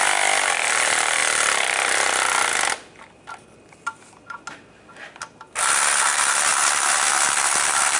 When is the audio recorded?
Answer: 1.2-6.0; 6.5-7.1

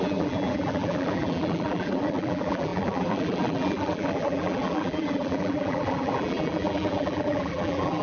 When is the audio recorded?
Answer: none

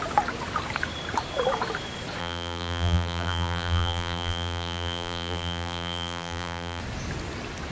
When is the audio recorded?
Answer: 0.0-2.2; 6.8-7.7

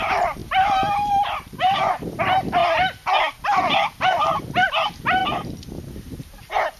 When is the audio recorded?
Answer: 2.6-4.0; 5.2-5.9